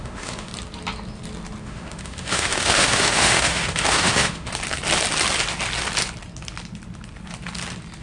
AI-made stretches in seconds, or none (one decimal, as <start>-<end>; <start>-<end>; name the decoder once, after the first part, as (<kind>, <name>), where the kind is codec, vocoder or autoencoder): 0.0-0.5 (autoencoder, DAC-VAE); 1.6-4.5